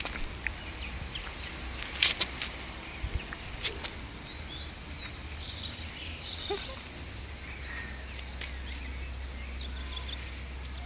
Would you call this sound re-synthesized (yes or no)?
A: no